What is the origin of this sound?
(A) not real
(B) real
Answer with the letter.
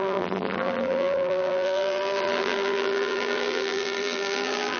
A